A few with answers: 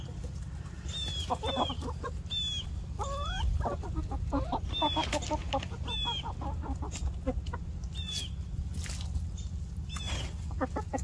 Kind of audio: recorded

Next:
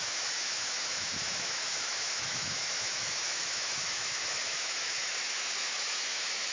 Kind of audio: remade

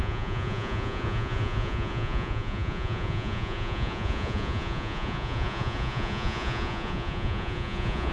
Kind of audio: remade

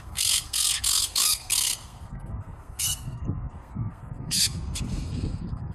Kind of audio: remade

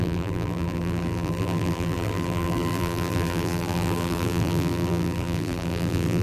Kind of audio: remade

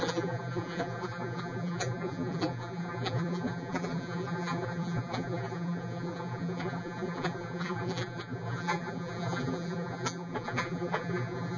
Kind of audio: remade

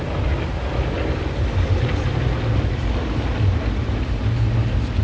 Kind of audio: recorded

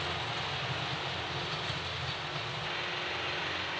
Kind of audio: recorded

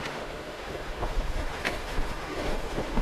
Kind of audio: remade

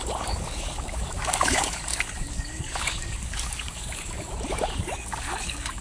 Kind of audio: remade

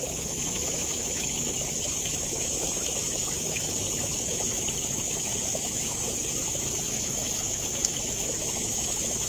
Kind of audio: remade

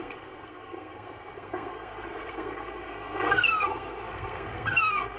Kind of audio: remade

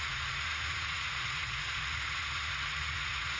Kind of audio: remade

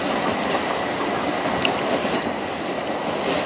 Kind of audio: recorded